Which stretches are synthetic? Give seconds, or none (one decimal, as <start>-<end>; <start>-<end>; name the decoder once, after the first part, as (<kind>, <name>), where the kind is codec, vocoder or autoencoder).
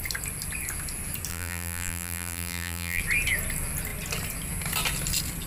1.3-3.0 (vocoder, BigVGAN v2)